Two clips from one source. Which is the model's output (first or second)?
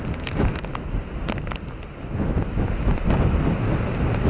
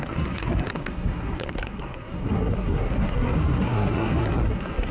second